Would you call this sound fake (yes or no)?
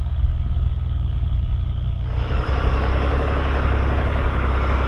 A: yes